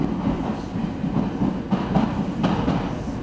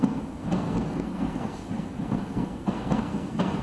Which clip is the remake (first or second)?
second